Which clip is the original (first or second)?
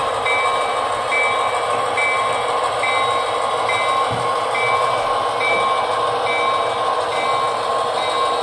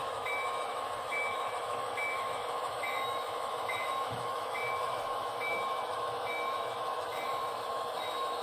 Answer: first